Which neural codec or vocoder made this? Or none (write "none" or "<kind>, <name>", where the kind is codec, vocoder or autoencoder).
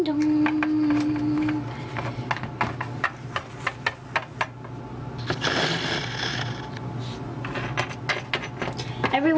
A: none